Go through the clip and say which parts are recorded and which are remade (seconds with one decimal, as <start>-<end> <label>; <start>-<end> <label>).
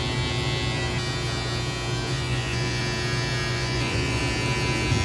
0.0-2.1 recorded; 2.1-2.8 remade; 2.8-3.5 recorded; 3.5-4.2 remade; 4.2-5.0 recorded